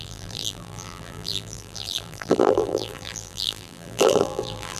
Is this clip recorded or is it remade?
remade